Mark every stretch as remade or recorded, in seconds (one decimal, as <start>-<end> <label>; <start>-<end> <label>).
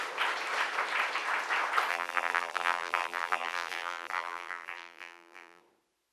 0.0-1.9 recorded; 1.9-5.6 remade; 5.6-6.1 recorded